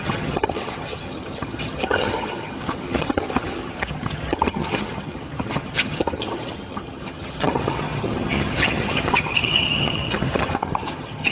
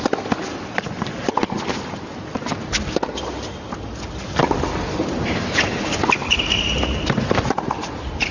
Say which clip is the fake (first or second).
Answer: first